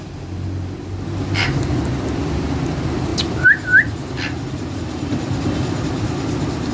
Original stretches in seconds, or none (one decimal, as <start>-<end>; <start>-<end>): 0.0-6.7